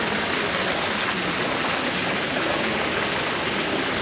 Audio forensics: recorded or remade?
recorded